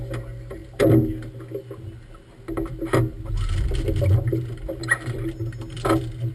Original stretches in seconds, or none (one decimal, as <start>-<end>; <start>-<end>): 0.0-6.3